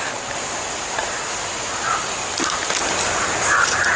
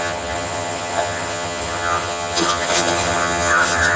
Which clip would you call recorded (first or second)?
first